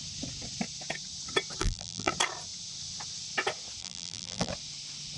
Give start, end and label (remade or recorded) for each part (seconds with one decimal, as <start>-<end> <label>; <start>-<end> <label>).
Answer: 0.0-1.6 recorded; 1.6-2.1 remade; 2.1-3.8 recorded; 3.8-4.5 remade; 4.5-5.2 recorded

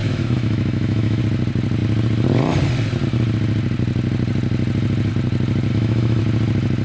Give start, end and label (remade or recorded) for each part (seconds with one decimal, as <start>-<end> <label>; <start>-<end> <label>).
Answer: 0.0-1.2 remade; 1.2-5.7 recorded; 5.7-6.2 remade; 6.2-6.8 recorded

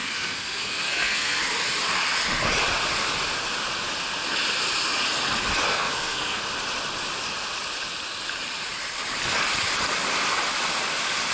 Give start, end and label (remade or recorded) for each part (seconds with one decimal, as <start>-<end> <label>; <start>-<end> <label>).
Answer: 0.0-1.4 remade; 1.4-5.7 recorded; 5.7-6.4 remade; 6.4-11.3 recorded

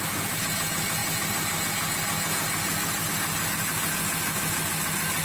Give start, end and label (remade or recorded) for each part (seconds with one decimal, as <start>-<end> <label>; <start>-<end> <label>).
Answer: 0.0-5.2 recorded

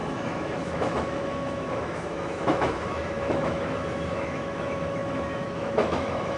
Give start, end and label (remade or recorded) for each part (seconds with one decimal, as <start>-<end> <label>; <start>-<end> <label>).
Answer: 0.0-6.4 remade

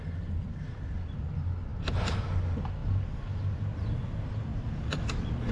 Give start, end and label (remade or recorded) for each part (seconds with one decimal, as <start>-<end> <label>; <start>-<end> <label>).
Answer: 0.0-5.5 recorded